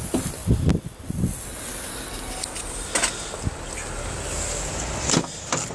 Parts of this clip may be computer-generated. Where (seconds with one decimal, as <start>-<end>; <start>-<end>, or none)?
none